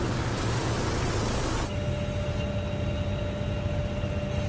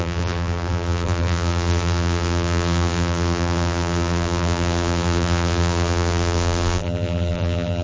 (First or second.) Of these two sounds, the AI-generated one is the second